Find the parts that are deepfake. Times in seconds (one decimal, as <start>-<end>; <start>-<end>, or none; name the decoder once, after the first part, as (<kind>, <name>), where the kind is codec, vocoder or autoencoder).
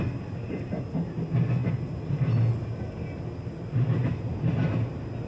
none